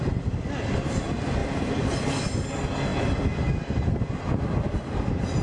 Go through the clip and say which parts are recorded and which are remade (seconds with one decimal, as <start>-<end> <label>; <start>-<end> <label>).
0.0-1.4 recorded; 1.4-2.2 remade; 2.2-5.4 recorded